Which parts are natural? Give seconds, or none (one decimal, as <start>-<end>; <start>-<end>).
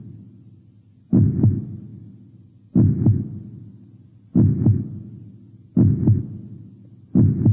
0.0-7.5